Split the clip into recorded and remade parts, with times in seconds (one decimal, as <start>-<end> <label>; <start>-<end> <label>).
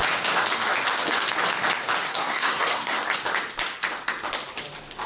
0.0-2.1 recorded; 2.1-3.0 remade; 3.0-5.1 recorded